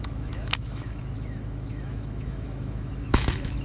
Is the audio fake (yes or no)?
yes